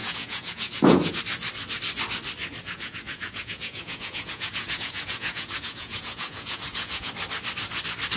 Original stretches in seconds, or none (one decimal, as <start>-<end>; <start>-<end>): 1.2-2.4; 7.1-8.2